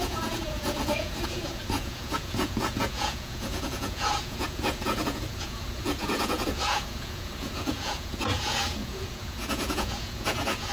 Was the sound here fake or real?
fake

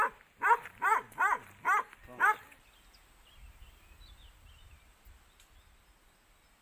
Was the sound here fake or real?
real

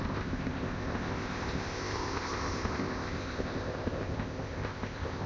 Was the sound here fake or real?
fake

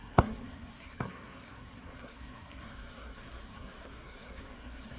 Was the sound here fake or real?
fake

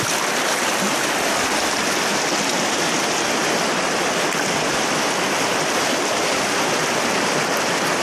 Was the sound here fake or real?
real